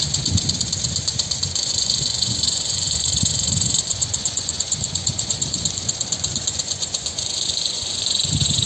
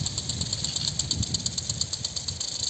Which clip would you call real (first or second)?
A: second